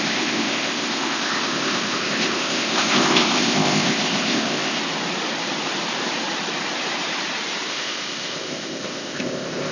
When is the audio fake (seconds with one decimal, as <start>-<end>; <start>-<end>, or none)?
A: 0.0-4.8; 7.7-9.7